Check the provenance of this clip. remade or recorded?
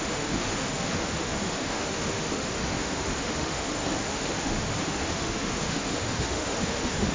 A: remade